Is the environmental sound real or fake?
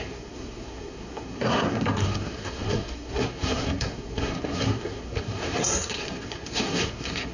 fake